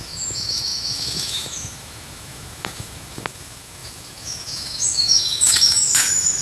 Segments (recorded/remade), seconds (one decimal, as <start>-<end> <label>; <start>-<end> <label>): 0.0-6.4 remade